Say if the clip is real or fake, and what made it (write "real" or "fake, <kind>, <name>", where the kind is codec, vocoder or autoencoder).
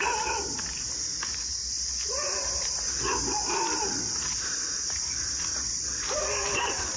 real